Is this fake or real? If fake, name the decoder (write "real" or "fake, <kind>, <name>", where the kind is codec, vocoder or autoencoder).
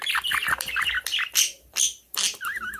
real